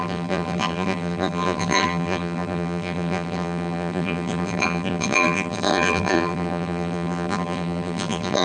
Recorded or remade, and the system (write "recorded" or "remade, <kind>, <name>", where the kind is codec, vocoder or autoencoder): remade, vocoder, BigVGAN v2